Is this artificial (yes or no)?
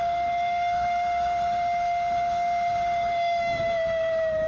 yes